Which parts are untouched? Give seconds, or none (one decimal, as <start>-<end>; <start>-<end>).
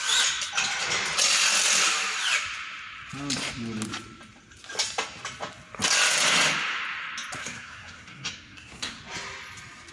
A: 0.0-7.4; 9.0-9.9